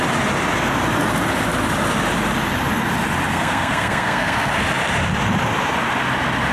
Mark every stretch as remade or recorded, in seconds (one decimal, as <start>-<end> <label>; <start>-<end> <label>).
0.0-3.3 recorded; 3.3-4.5 remade; 4.5-6.5 recorded